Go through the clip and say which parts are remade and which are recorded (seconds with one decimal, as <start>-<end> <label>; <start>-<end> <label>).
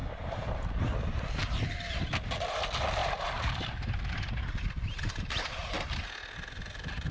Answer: 0.0-0.5 remade; 0.5-3.0 recorded; 3.0-5.7 remade; 5.7-7.1 recorded